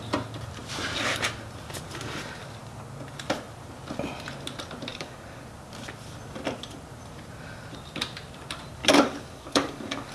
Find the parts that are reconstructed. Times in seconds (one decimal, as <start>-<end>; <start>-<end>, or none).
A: 4.9-5.4; 8.8-10.1